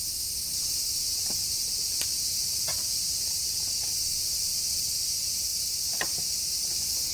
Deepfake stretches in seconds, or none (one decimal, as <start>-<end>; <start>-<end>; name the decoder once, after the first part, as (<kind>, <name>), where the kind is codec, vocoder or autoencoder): 1.4-3.3 (vocoder, BigVGAN v2); 5.5-6.6